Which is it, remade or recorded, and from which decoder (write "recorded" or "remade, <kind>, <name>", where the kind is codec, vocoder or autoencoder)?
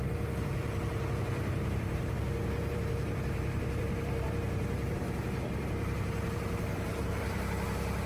remade, vocoder, BigVGAN v2